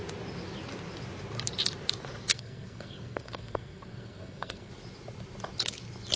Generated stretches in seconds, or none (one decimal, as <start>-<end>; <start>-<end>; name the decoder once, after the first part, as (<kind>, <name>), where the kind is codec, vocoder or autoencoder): 2.3-4.7 (codec, SNAC)